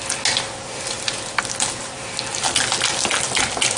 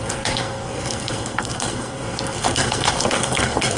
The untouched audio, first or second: first